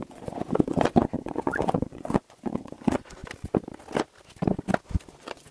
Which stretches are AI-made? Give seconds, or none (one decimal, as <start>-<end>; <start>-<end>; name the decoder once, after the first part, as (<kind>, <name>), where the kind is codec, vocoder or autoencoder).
0.0-3.2 (vocoder, Vocos); 5.1-5.5